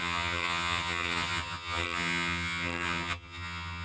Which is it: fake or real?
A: fake